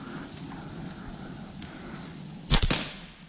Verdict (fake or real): real